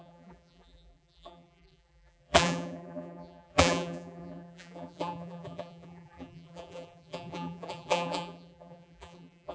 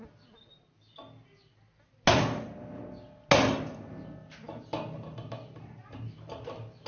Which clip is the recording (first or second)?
second